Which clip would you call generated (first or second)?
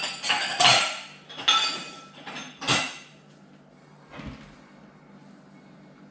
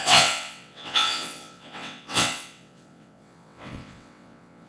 second